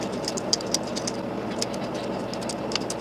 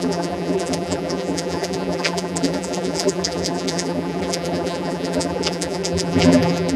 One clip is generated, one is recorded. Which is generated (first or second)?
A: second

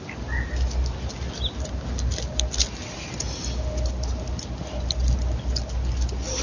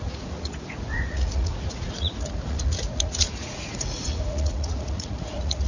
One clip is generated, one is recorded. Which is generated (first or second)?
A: second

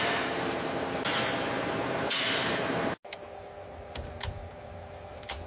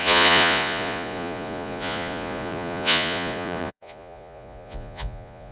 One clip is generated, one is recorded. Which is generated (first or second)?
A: second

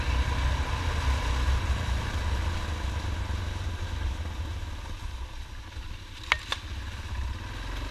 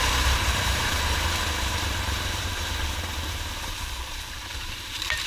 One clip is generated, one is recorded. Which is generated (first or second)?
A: second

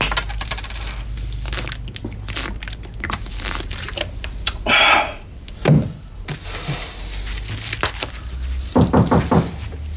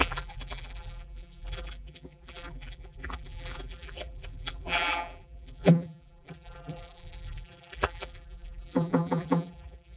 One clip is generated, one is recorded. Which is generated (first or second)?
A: second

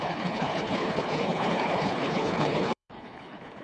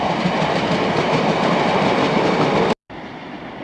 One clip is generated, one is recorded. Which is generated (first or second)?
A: first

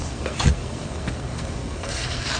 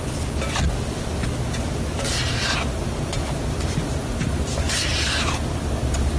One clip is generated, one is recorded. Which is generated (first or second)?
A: first